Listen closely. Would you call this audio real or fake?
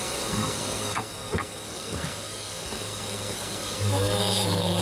fake